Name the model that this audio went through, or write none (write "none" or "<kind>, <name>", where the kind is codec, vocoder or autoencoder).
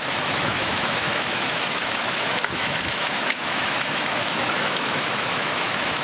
autoencoder, DAC-VAE